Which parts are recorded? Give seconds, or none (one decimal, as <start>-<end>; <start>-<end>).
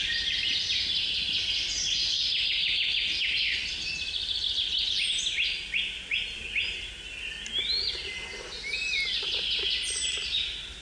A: 0.0-10.8